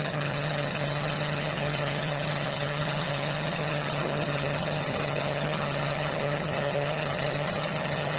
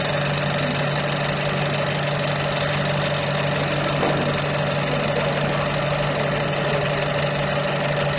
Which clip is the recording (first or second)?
second